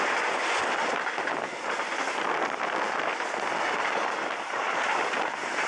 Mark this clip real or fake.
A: real